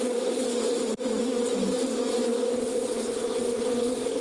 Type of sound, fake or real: real